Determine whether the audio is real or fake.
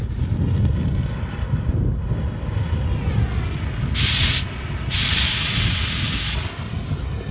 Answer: real